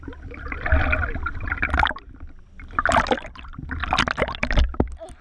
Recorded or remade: recorded